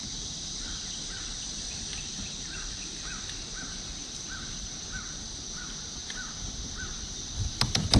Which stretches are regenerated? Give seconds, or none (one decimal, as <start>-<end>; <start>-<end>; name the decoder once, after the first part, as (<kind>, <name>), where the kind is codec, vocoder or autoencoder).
0.0-8.0 (vocoder, BigVGAN v2)